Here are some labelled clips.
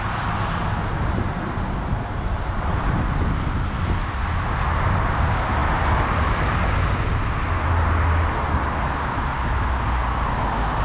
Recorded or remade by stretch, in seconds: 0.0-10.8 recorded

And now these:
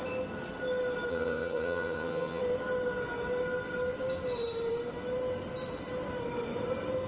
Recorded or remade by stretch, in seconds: 0.0-1.1 recorded; 1.1-2.4 remade; 2.4-7.1 recorded